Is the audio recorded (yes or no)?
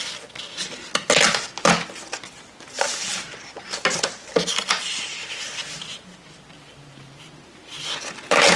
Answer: yes